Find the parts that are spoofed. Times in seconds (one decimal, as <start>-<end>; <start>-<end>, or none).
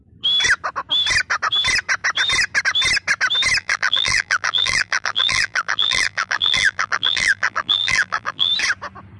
3.6-8.5